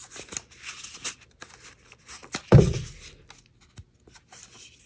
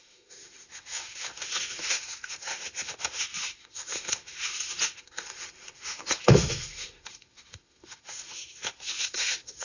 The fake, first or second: second